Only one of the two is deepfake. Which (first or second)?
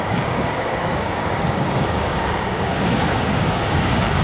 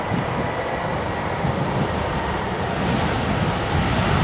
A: first